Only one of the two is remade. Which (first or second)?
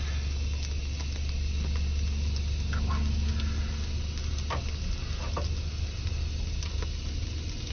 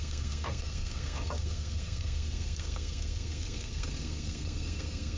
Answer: second